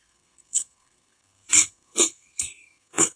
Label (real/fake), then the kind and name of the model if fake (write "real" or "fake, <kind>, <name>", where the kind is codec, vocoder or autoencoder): fake, codec, SNAC